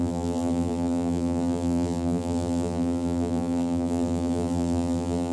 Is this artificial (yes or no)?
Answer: yes